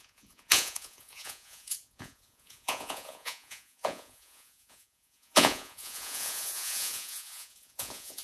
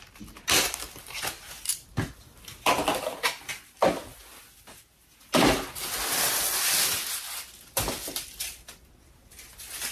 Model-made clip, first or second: first